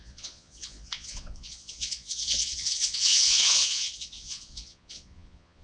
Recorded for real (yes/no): no